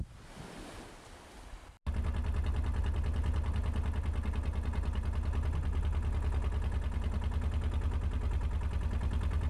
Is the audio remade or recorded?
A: recorded